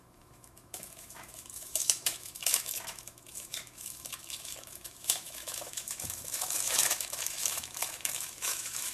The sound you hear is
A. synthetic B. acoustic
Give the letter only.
A